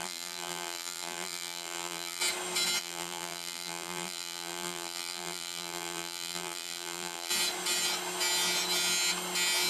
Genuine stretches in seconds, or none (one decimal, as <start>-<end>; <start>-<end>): 2.2-2.8; 7.3-9.7